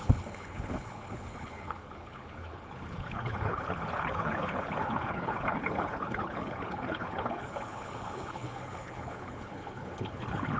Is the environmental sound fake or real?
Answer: fake